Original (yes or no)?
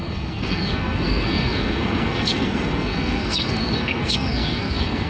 no